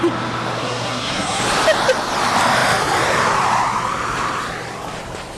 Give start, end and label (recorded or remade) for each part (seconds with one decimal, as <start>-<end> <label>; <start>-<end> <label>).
0.0-0.6 recorded; 0.6-1.4 remade; 1.4-5.4 recorded